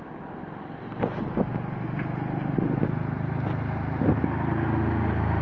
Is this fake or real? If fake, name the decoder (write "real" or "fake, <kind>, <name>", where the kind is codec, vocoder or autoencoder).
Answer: real